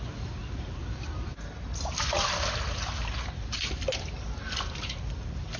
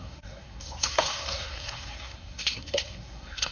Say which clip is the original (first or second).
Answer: first